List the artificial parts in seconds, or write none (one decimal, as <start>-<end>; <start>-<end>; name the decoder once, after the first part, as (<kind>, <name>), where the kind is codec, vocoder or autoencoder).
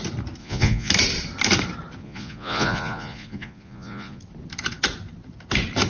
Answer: 0.4-0.9 (vocoder, Vocos); 2.0-4.2